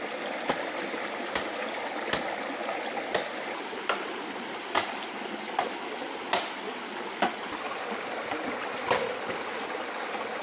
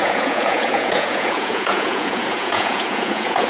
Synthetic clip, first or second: second